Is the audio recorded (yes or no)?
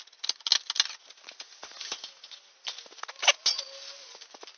yes